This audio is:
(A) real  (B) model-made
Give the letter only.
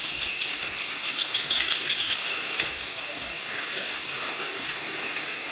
B